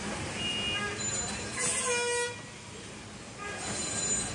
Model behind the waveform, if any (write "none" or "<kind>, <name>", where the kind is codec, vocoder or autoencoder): none